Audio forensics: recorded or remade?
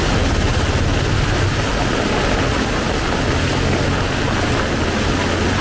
recorded